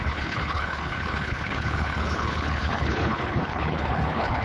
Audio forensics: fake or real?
fake